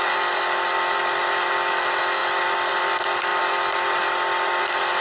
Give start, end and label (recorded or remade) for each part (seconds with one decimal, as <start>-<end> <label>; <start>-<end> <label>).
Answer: 0.0-5.0 recorded